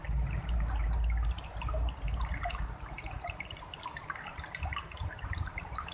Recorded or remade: remade